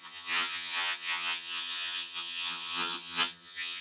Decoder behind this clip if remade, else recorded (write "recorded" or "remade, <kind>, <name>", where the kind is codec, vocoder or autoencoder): remade, vocoder, HiFi-GAN